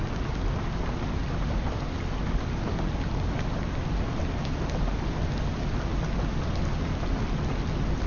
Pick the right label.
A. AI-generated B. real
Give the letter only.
B